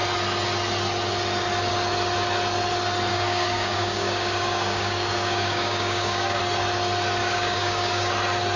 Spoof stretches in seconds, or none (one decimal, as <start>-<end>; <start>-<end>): 3.1-6.4; 7.2-8.1